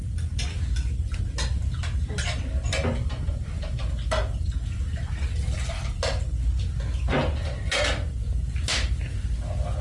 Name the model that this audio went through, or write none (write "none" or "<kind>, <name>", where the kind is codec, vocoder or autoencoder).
none